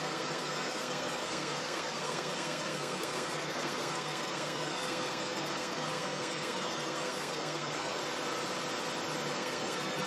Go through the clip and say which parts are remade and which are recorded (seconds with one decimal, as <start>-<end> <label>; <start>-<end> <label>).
0.0-8.0 remade; 8.0-9.3 recorded; 9.3-10.1 remade